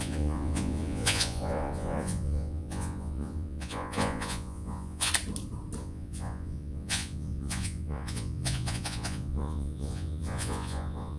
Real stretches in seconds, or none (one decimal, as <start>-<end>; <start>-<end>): 5.1-5.8